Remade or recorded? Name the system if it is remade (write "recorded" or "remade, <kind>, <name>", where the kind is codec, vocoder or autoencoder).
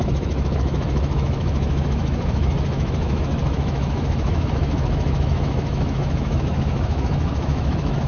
remade, autoencoder, DAC-VAE